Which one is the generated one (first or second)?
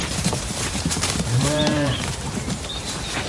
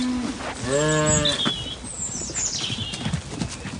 first